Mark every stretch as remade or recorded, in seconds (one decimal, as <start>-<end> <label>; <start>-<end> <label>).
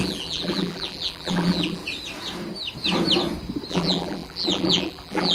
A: 0.0-1.8 remade; 1.8-3.7 recorded; 3.7-5.3 remade